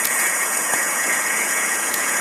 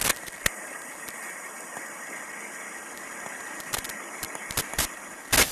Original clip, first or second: second